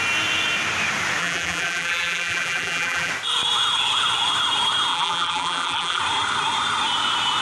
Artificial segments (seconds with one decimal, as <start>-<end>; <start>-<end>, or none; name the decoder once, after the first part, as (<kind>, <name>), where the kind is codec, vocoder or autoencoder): 1.2-3.1 (vocoder, BigVGAN v2); 4.9-6.0